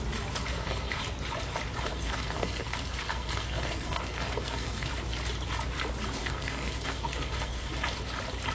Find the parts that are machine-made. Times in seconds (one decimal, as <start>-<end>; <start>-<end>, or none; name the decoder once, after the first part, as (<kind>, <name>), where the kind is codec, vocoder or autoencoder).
0.5-1.0 (codec, SNAC); 1.9-4.9; 6.2-7.7

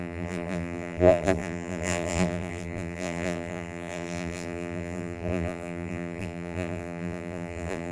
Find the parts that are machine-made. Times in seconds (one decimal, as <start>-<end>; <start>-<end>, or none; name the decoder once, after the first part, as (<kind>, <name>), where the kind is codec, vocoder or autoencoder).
0.0-7.9 (vocoder, BigVGAN v2)

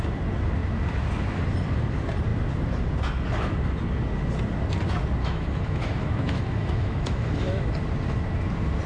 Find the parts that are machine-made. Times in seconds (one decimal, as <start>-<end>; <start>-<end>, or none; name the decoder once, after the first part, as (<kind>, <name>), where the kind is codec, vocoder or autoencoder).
5.2-7.7 (autoencoder, DAC-VAE)

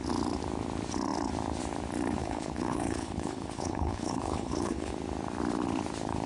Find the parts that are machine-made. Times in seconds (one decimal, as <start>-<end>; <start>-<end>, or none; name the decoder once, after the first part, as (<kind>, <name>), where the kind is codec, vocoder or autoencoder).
2.2-4.9 (codec, HILCodec)

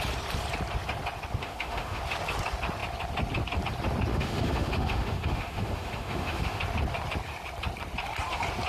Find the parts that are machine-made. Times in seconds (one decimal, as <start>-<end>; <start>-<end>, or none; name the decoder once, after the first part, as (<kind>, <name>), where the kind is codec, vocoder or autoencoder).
1.4-2.0 (autoencoder, DAC-VAE); 4.1-6.6

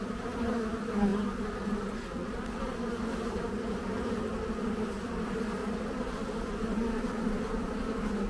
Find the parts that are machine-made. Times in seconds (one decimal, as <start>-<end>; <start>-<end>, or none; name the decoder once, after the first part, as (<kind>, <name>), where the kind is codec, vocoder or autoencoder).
0.0-1.1 (vocoder, BigVGAN v2); 2.3-5.6; 6.4-8.3